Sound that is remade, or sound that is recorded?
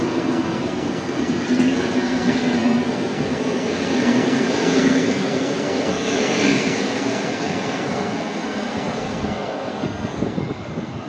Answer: remade